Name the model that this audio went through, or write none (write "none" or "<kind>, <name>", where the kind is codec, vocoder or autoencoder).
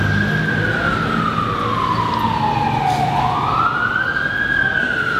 none